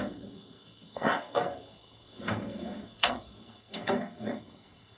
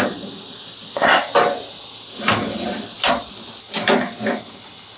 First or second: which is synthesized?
first